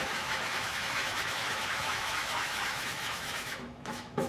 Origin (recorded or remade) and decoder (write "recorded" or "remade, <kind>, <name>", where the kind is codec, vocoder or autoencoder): remade, autoencoder, DAC-VAE